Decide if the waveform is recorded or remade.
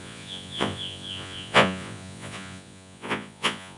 remade